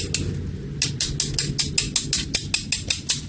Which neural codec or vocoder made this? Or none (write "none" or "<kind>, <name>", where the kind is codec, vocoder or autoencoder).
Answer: none